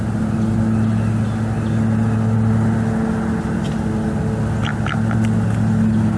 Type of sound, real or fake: real